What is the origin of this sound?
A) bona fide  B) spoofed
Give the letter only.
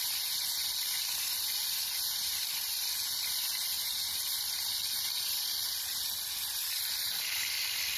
B